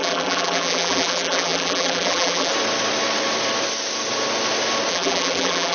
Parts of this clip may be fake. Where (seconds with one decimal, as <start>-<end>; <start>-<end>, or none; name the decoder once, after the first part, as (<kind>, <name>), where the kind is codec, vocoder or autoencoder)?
0.0-2.5 (vocoder, BigVGAN v2); 4.9-5.7